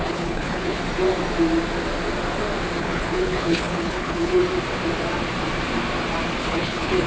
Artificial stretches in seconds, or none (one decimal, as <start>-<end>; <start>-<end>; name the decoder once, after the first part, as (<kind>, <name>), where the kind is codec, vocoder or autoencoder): 0.0-0.8 (codec, HILCodec); 2.8-4.4; 6.4-7.1